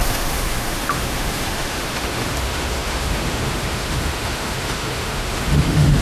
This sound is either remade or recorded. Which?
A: remade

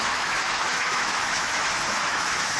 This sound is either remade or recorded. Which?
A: remade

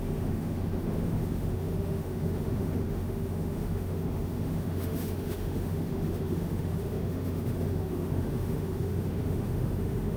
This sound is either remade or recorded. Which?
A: remade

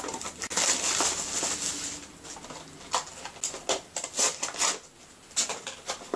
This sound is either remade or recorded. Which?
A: recorded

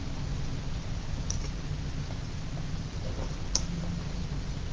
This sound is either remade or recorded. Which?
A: recorded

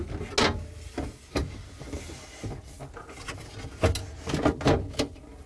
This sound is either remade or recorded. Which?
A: recorded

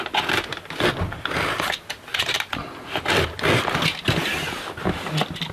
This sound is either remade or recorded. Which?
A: recorded